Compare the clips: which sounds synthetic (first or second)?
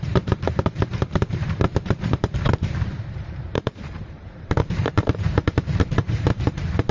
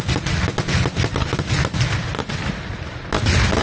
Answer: first